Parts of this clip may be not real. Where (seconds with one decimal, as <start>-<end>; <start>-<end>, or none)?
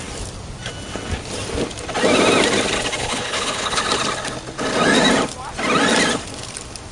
3.0-3.8